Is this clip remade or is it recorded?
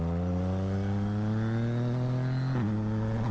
recorded